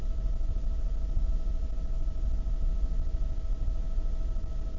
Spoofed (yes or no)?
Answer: no